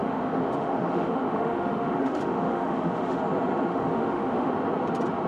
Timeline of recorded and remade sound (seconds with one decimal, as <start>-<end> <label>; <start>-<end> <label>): 0.0-3.2 remade; 3.2-3.7 recorded; 3.7-4.5 remade; 4.5-5.3 recorded